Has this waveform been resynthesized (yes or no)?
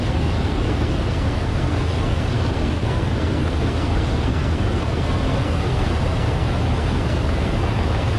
yes